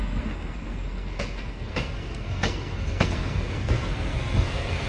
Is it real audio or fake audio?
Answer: fake